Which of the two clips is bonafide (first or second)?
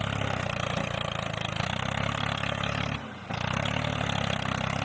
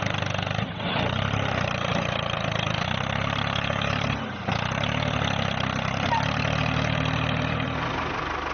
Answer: first